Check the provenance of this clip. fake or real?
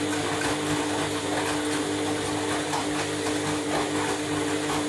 real